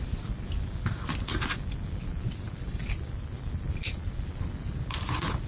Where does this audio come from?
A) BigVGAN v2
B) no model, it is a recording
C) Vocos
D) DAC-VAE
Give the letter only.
B